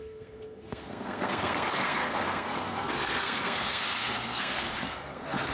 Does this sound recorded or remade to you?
remade